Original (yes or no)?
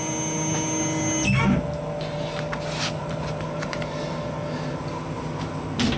yes